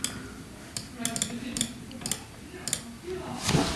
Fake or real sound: real